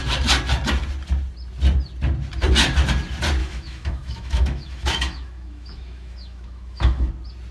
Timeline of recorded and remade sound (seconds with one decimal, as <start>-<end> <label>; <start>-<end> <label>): 0.0-3.4 recorded; 3.4-7.1 remade; 7.1-7.5 recorded